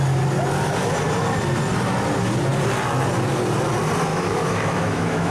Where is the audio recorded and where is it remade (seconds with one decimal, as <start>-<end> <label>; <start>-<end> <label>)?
0.0-4.1 recorded; 4.1-5.3 remade